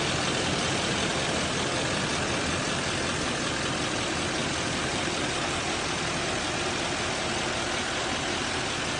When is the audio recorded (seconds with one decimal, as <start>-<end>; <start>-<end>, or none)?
0.0-1.1; 2.1-4.4; 5.4-9.0